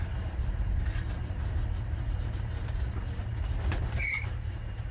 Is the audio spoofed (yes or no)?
no